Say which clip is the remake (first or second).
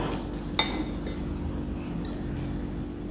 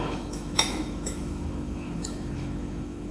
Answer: second